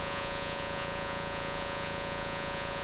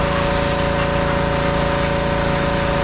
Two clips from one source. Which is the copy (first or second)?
first